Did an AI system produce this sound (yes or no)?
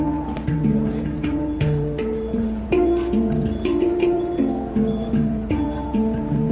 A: yes